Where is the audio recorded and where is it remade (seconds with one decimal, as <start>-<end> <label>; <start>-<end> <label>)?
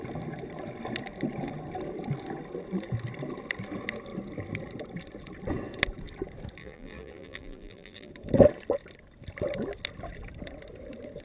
0.0-6.6 recorded; 6.6-8.1 remade; 8.1-11.2 recorded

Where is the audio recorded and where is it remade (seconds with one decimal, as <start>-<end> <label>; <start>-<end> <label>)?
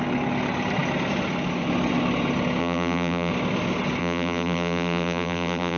0.0-2.6 recorded; 2.6-3.3 remade; 3.3-4.0 recorded; 4.0-5.8 remade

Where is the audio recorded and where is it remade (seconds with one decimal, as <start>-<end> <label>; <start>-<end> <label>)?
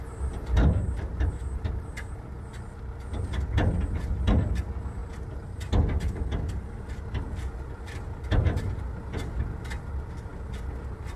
0.0-5.0 recorded; 5.0-5.7 remade; 5.7-11.2 recorded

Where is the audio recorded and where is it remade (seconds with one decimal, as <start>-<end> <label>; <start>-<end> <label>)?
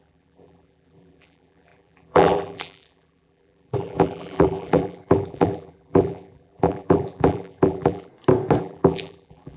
0.0-8.1 remade; 8.1-8.6 recorded; 8.6-9.6 remade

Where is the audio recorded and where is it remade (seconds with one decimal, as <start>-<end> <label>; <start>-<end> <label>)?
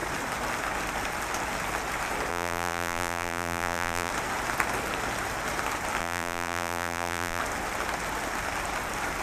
0.0-2.3 recorded; 2.3-4.1 remade; 4.1-6.0 recorded; 6.0-7.4 remade; 7.4-9.2 recorded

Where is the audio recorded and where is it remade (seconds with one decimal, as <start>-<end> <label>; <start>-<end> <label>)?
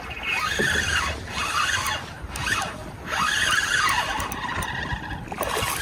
0.0-5.8 recorded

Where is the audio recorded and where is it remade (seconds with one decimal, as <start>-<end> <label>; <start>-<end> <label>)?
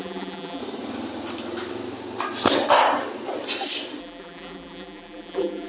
0.0-0.6 remade; 0.6-4.0 recorded; 4.0-5.7 remade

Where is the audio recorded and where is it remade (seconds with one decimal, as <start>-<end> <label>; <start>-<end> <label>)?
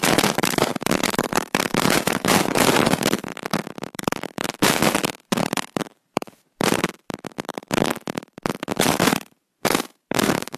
0.0-3.3 remade; 3.3-3.9 recorded; 3.9-10.6 remade